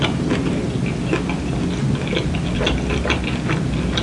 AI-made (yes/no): no